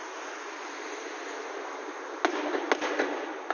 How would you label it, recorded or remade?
recorded